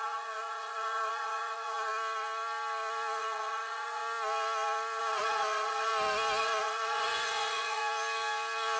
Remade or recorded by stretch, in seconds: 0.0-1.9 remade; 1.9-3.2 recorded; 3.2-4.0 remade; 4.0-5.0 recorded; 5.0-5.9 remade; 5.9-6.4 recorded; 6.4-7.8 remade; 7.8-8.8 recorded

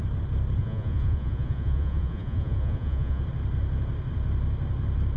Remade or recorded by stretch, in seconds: 0.0-0.6 recorded; 0.6-3.2 remade; 3.2-5.2 recorded

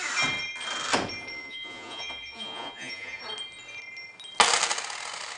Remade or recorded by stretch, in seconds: 0.0-1.4 recorded; 1.4-3.2 remade; 3.2-5.4 recorded

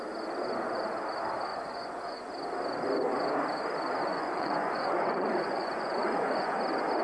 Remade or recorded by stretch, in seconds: 0.0-1.5 recorded; 1.5-2.3 remade; 2.3-4.1 recorded; 4.1-6.6 remade; 6.6-7.0 recorded

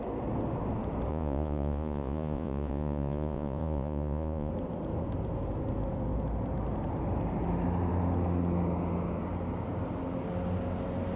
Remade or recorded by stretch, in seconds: 0.0-1.1 recorded; 1.1-4.5 remade; 4.5-11.2 recorded